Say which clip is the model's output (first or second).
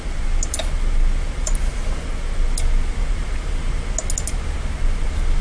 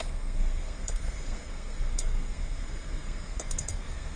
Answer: second